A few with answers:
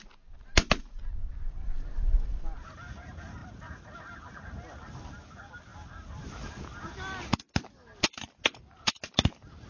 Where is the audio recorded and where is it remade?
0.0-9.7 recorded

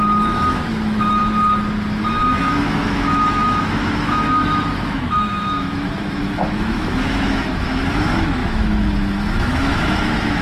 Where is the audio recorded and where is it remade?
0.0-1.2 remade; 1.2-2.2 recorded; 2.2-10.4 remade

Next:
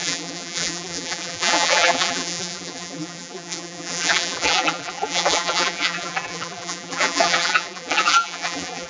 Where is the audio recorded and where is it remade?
0.0-8.9 remade

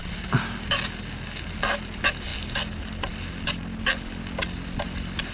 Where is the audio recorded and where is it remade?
0.0-5.3 recorded